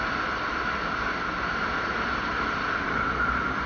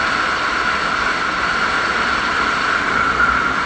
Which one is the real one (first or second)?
first